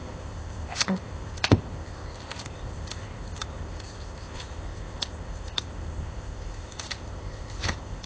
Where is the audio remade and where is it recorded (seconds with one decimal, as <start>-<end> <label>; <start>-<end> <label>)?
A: 0.0-8.1 remade